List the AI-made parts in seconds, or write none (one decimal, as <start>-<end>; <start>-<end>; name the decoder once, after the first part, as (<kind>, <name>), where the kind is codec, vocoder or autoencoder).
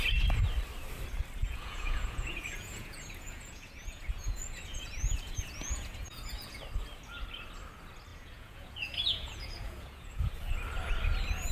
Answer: 1.4-6.6 (vocoder, Vocos); 8.1-10.3